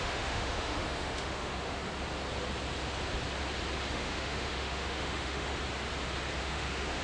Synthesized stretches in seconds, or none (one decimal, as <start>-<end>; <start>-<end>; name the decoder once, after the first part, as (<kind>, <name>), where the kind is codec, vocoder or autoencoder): 0.0-1.8 (autoencoder, DAC-VAE); 3.9-5.5; 6.4-7.0